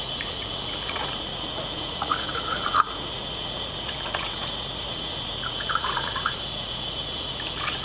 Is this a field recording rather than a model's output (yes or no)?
no